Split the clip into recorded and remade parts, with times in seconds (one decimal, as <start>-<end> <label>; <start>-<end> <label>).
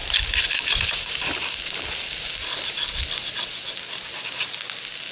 0.0-5.1 recorded